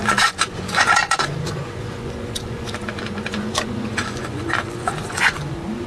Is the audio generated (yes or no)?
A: yes